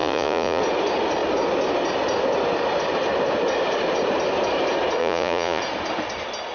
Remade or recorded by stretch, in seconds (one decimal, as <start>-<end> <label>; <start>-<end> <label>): 0.0-0.6 remade; 0.6-5.0 recorded; 5.0-5.6 remade; 5.6-6.5 recorded